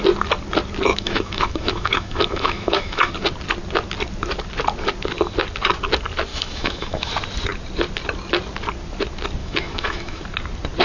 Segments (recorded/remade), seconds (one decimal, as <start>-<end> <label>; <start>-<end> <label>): 0.0-0.9 recorded; 0.9-3.1 remade; 3.1-6.3 recorded; 6.3-7.1 remade; 7.1-9.4 recorded; 9.4-10.2 remade; 10.2-10.8 recorded